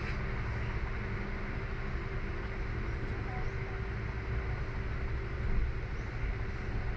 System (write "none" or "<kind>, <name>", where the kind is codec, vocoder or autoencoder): none